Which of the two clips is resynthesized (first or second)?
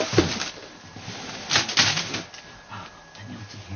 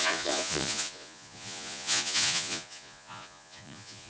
second